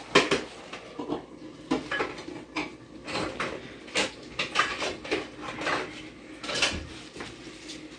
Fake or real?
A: real